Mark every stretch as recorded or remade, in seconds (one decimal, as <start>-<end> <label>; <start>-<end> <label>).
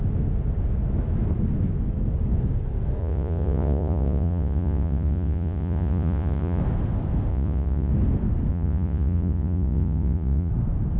0.0-3.0 recorded; 3.0-6.6 remade; 6.6-7.3 recorded; 7.3-7.9 remade; 7.9-8.5 recorded; 8.5-10.5 remade; 10.5-11.0 recorded